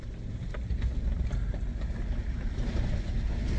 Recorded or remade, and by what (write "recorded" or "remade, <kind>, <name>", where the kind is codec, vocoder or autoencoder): recorded